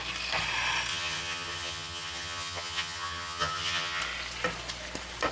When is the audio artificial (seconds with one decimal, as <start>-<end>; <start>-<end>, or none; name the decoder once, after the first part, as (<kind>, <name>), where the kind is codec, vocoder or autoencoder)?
0.9-4.0 (vocoder, HiFi-GAN)